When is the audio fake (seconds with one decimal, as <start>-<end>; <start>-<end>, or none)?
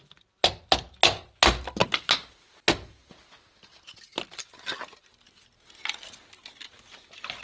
none